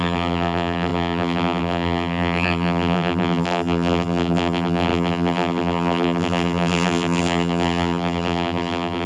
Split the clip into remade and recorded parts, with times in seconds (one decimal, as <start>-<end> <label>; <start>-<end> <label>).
0.0-9.1 remade